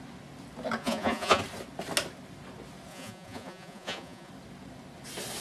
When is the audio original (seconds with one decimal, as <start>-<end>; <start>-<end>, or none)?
0.0-0.8; 1.4-2.9; 4.3-5.4